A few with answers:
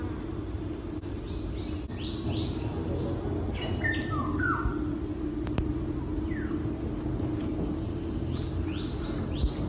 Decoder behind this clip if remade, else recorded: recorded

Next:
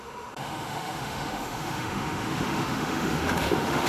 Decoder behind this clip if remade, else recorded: remade, autoencoder, DAC-VAE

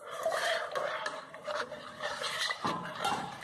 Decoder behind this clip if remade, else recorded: remade, vocoder, BigVGAN v2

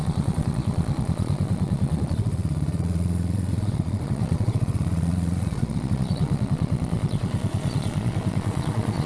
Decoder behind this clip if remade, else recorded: remade, vocoder, Vocos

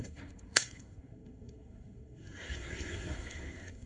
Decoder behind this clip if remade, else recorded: remade, codec, SNAC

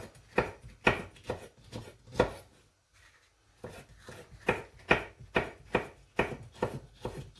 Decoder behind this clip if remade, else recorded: recorded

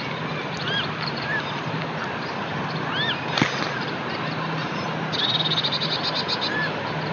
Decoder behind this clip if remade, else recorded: recorded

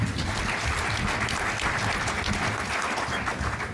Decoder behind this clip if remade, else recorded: recorded